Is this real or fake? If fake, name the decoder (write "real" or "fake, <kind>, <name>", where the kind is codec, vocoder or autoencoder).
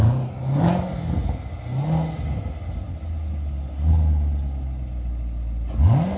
real